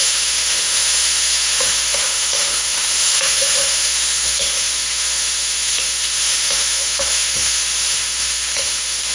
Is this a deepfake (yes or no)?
yes